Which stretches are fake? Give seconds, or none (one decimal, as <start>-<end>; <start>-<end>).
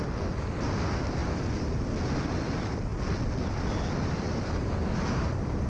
none